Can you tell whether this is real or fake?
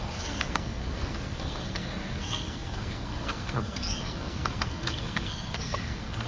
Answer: fake